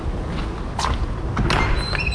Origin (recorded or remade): recorded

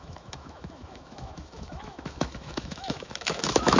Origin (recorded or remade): remade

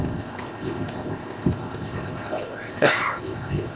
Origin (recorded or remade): remade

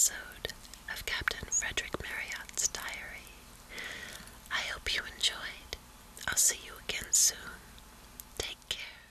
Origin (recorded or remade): recorded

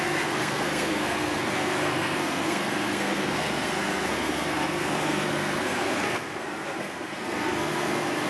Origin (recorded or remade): remade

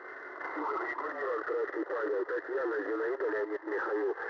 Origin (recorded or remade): recorded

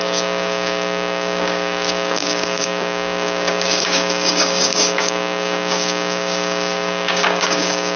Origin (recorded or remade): remade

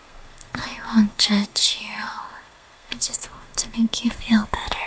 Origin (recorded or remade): remade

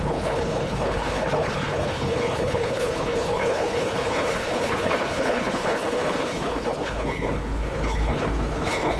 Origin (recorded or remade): remade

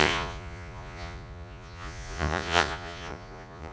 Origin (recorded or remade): remade